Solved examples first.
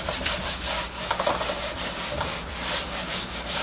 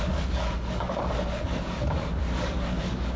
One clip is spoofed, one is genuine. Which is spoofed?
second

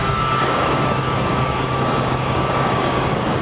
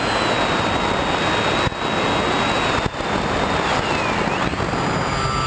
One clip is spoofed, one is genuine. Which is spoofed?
first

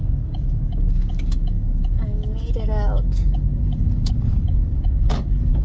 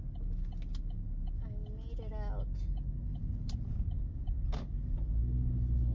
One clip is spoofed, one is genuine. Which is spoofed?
first